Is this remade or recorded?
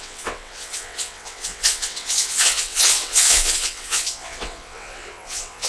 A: remade